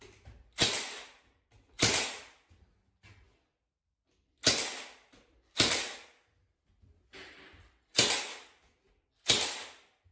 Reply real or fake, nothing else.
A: real